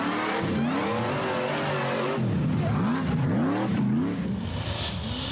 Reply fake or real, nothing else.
real